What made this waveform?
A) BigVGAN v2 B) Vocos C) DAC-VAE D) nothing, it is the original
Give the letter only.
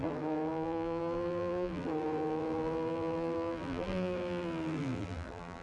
A